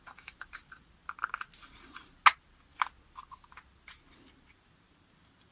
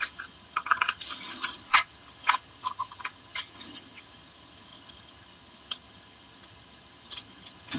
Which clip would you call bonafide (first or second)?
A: first